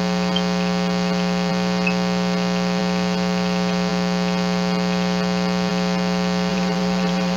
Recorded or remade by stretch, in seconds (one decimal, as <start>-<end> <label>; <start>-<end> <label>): 0.0-6.5 recorded; 6.5-7.4 remade